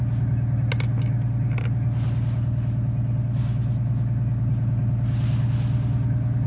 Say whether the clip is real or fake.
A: real